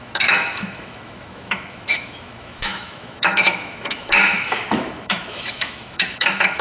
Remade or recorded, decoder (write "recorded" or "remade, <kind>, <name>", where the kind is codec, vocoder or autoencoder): remade, autoencoder, DAC-VAE